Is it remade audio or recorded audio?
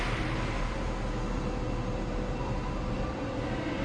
recorded